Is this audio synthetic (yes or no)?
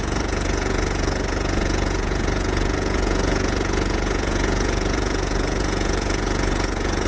yes